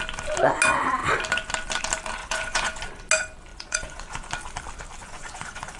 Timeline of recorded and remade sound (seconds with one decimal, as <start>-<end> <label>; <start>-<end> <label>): 0.0-2.2 recorded; 2.2-2.8 remade; 2.8-3.5 recorded; 3.5-4.3 remade; 4.3-5.0 recorded; 5.0-5.8 remade